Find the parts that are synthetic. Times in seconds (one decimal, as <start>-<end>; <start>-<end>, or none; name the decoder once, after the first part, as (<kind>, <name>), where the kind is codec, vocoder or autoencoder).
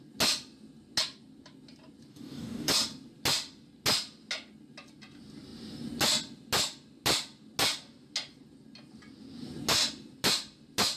2.1-2.7 (codec, DAC)